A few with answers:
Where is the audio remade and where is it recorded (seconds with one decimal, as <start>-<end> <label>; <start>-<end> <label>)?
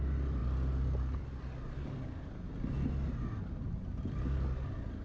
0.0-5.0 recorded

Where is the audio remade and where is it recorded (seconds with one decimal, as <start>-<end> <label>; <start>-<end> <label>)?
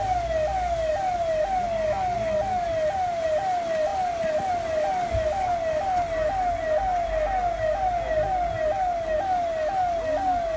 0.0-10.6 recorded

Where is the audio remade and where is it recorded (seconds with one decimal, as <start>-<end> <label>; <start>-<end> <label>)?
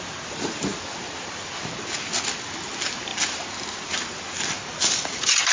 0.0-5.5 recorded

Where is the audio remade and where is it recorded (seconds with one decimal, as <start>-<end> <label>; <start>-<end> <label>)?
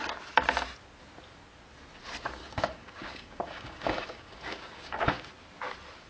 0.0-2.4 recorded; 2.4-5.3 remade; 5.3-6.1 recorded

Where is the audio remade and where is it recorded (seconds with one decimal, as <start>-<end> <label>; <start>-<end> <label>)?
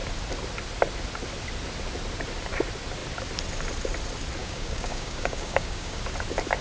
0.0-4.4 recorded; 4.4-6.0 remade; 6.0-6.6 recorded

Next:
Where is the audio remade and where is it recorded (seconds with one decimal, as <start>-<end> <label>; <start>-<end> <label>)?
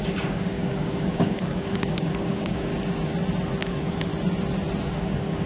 0.0-2.7 remade; 2.7-3.6 recorded; 3.6-4.1 remade; 4.1-4.9 recorded; 4.9-5.5 remade